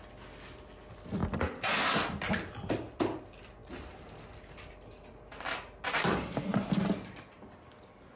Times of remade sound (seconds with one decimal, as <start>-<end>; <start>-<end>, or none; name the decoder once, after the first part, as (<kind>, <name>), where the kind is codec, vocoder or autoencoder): none